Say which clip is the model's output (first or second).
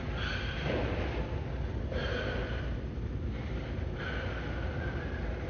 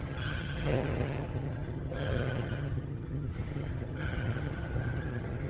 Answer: second